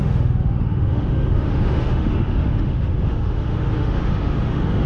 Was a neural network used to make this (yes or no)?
yes